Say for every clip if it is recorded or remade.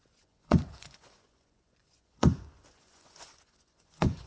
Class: remade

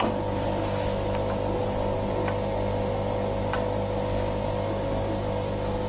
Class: recorded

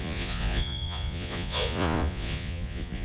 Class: remade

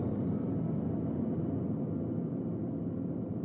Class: recorded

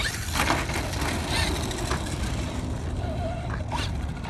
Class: recorded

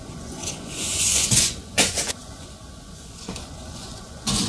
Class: remade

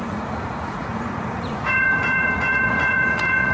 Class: remade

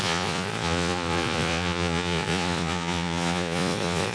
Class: remade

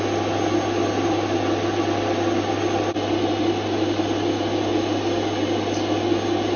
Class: recorded